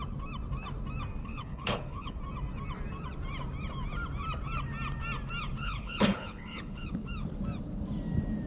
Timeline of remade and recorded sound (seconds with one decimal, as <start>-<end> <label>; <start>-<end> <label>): 0.0-1.2 recorded; 1.2-2.2 remade; 2.2-5.6 recorded; 5.6-6.9 remade; 6.9-8.5 recorded